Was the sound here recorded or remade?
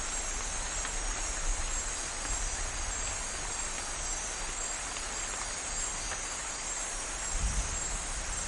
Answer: recorded